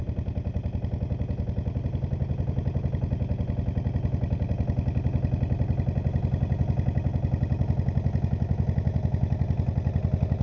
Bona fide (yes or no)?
yes